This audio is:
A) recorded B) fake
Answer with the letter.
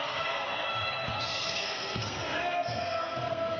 B